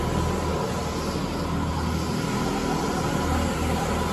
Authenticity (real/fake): real